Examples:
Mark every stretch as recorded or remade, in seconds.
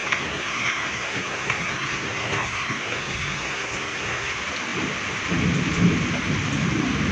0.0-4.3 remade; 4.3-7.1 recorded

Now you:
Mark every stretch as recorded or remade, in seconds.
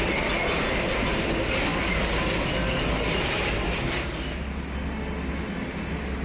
0.0-6.2 recorded